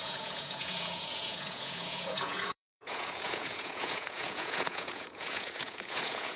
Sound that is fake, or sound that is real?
fake